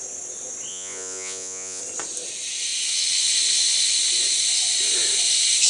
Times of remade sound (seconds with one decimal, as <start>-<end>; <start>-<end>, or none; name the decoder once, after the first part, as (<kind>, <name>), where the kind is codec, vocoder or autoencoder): 0.7-1.8 (vocoder, Vocos)